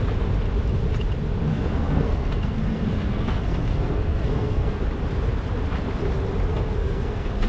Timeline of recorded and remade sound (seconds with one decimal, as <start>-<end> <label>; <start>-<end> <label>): 0.0-1.5 recorded; 1.5-4.8 remade; 4.8-6.5 recorded; 6.5-7.5 remade